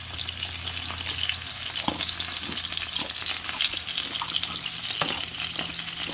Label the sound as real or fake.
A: real